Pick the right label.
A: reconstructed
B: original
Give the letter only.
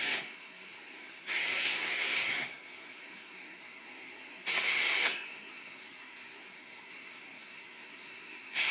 A